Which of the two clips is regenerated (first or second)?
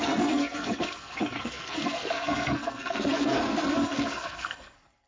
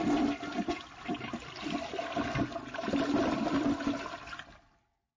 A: first